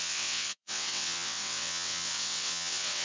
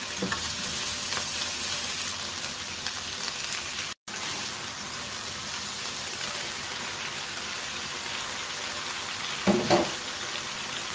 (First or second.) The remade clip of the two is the first